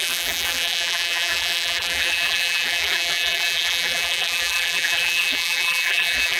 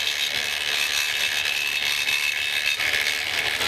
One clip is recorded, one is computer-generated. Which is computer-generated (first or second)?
first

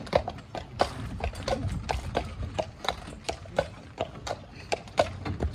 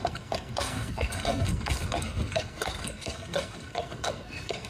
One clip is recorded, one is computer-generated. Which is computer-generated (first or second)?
second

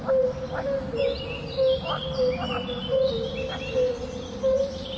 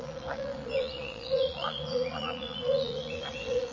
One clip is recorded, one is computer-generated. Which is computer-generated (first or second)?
second